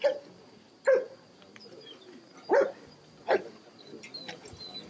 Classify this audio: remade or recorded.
recorded